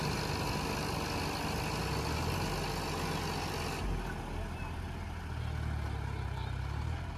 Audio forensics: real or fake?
real